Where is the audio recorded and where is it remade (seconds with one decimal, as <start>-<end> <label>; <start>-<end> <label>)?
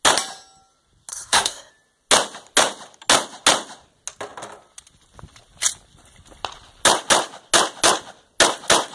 0.0-1.1 recorded; 1.1-1.7 remade; 1.7-8.9 recorded